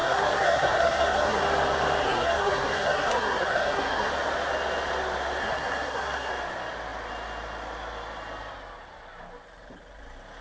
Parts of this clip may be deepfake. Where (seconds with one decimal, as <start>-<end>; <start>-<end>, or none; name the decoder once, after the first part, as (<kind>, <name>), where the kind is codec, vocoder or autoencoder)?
0.0-1.4 (codec, SNAC); 2.0-4.1; 5.4-6.3